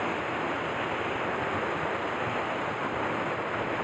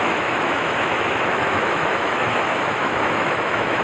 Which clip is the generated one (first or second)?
second